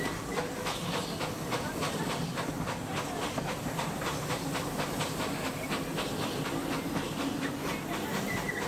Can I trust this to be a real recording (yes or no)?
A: yes